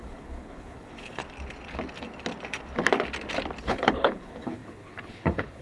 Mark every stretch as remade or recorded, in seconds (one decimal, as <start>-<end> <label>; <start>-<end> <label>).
0.0-1.2 remade; 1.2-3.6 recorded; 3.6-5.6 remade